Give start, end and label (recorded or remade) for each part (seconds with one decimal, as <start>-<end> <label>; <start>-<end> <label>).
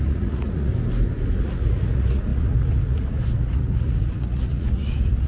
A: 0.0-0.7 remade; 0.7-1.4 recorded; 1.4-5.3 remade